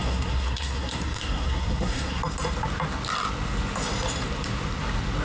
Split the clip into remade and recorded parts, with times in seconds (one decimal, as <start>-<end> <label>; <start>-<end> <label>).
0.0-2.2 remade; 2.2-5.2 recorded